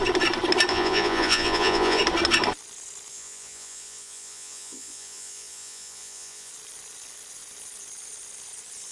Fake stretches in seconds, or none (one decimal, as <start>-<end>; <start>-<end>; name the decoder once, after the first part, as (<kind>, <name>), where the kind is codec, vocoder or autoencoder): 0.7-2.0 (vocoder, Vocos); 3.1-6.5